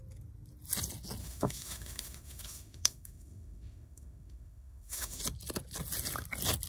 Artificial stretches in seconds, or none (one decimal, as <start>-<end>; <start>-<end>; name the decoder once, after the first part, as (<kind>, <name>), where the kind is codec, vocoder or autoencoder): 1.2-5.2 (autoencoder, DAC-VAE)